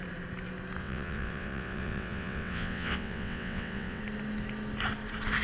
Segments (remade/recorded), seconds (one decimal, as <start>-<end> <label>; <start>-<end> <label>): 0.0-0.8 recorded; 0.8-4.0 remade; 4.0-5.4 recorded